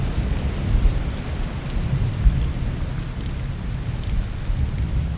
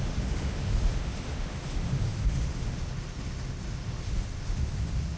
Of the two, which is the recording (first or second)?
first